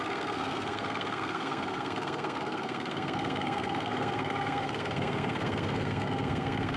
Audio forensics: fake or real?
fake